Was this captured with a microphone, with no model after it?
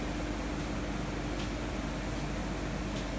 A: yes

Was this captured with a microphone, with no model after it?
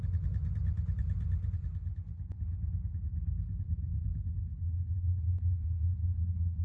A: yes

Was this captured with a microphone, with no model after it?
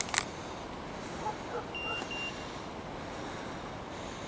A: yes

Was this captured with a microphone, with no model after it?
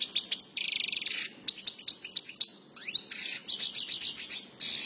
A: yes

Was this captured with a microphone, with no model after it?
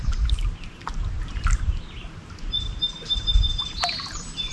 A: yes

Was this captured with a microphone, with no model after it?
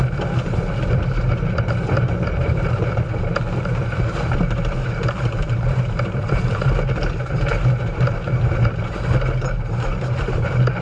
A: no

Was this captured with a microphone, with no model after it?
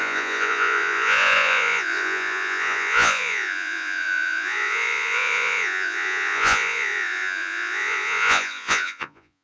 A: no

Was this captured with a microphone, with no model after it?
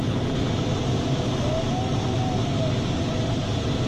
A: yes